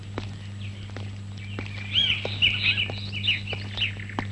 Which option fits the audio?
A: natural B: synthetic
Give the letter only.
A